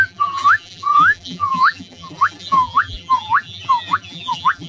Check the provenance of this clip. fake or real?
fake